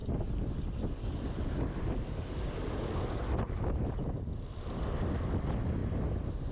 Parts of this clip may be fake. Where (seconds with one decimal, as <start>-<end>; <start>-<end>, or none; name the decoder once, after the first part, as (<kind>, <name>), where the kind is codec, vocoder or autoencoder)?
none